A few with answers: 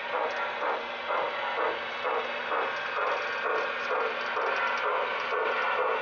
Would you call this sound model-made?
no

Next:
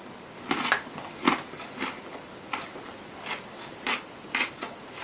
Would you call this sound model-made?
no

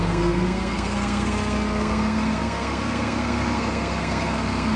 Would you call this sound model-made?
yes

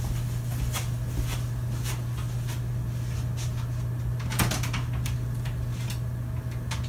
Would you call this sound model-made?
no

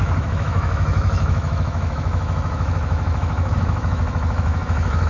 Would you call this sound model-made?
yes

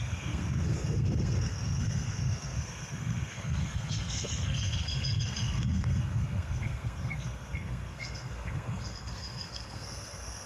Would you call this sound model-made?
yes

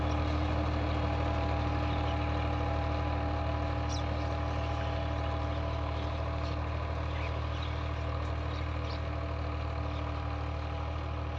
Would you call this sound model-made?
no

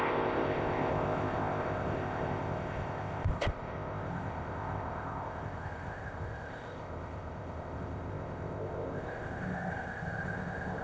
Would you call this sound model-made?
yes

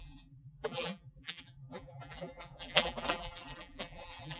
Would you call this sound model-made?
yes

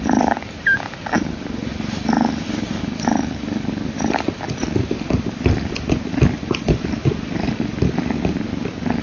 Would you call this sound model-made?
no